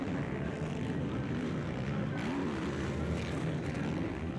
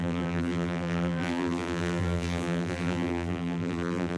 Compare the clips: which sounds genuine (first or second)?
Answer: first